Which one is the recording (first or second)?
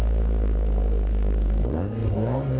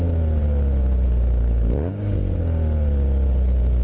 second